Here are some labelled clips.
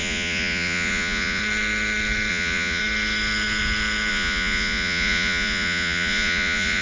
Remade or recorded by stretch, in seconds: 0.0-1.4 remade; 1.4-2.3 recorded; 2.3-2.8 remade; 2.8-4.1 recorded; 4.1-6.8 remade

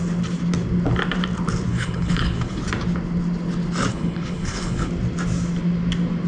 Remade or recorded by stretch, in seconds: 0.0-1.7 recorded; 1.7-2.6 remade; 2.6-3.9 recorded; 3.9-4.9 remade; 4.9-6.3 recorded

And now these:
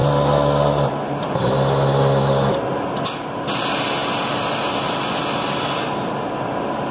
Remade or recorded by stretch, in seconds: 0.0-6.9 recorded

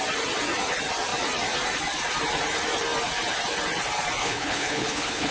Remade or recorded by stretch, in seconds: 0.0-4.2 recorded; 4.2-5.3 remade

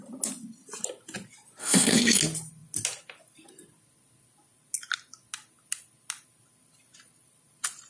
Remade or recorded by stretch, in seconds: 0.0-1.6 recorded; 1.6-2.2 remade; 2.2-7.9 recorded

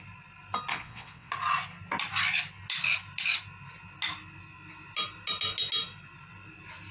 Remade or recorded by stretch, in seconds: 0.0-0.7 recorded; 0.7-1.3 remade; 1.3-6.9 recorded